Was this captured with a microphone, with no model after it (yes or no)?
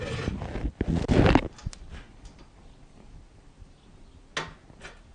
yes